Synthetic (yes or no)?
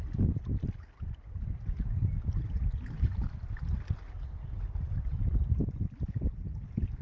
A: no